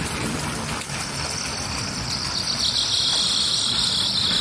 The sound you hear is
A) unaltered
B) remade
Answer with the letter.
A